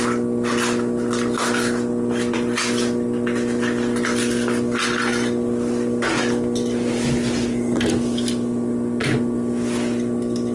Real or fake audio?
real